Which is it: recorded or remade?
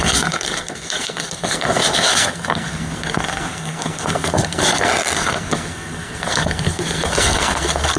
remade